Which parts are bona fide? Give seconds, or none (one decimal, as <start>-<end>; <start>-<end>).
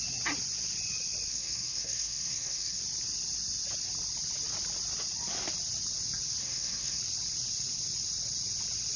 0.0-1.3; 2.8-6.4; 7.0-9.0